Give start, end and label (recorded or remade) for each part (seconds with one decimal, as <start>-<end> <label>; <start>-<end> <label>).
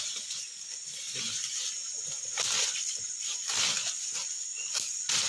0.0-5.3 recorded